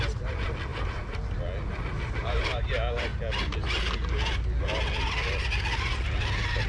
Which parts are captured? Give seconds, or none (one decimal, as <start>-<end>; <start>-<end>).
0.0-2.2; 2.7-6.7